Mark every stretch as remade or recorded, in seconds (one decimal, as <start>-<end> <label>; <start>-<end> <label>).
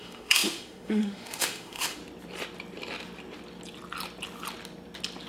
0.0-2.0 remade; 2.0-5.3 recorded